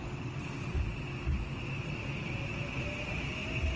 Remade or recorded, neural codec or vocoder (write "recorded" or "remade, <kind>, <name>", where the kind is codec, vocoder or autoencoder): recorded